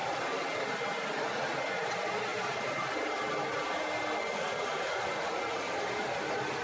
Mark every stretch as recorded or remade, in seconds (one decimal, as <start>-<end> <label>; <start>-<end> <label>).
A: 0.0-2.3 recorded; 2.3-3.2 remade; 3.2-6.6 recorded